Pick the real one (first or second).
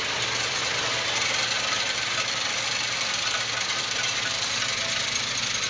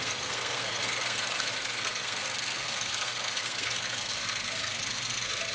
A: first